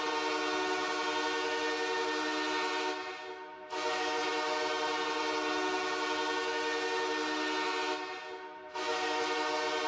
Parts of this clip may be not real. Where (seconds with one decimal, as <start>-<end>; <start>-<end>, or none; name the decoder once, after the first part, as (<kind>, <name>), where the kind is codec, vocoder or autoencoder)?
none